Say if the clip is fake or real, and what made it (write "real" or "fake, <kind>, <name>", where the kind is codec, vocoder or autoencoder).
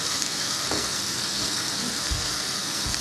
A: fake, codec, SNAC